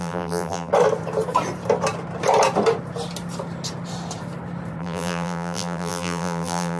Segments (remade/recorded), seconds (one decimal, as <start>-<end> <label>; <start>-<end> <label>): 0.0-0.7 remade; 0.7-4.8 recorded; 4.8-6.8 remade